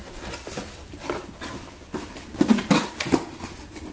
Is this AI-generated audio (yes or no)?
yes